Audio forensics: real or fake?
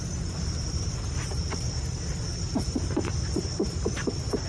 real